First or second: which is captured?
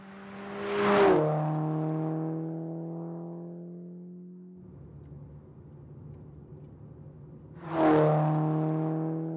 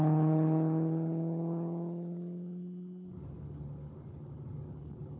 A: first